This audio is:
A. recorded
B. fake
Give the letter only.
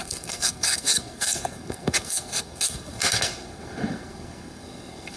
B